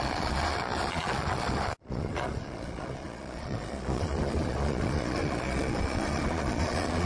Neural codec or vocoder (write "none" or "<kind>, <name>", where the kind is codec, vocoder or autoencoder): vocoder, Vocos